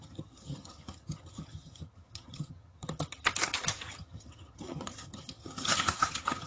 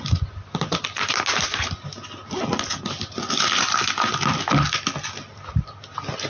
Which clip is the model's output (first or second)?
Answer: first